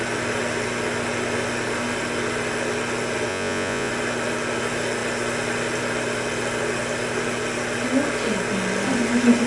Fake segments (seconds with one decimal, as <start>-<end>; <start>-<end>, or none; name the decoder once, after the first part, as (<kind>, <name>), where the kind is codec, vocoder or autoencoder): 3.3-3.9 (vocoder, Vocos)